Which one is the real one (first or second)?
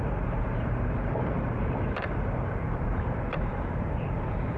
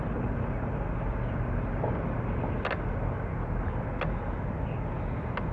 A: second